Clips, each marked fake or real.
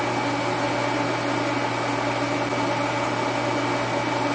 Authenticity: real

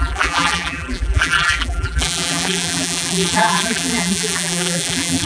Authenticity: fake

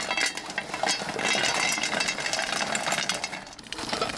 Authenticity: real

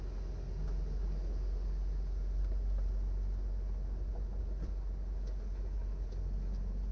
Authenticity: real